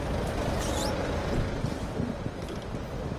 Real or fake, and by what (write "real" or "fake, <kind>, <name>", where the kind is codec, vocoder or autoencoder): real